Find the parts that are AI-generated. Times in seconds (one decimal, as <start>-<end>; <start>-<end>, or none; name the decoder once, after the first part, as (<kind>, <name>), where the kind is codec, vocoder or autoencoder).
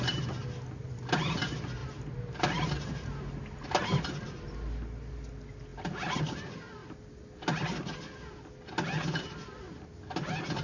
1.8-2.7 (vocoder, BigVGAN v2)